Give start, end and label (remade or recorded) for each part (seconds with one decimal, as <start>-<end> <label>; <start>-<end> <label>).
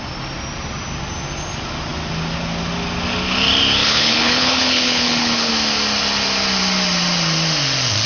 0.0-3.8 recorded; 3.8-5.5 remade; 5.5-8.1 recorded